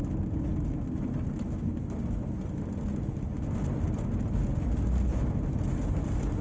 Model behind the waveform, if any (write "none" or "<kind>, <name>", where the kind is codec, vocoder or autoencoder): none